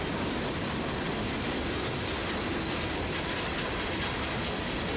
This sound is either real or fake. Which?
real